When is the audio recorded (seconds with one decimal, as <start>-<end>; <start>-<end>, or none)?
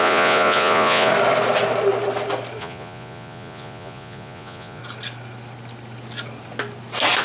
1.1-2.6; 4.8-7.2